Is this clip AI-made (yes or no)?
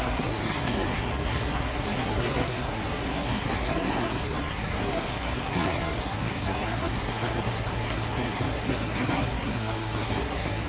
yes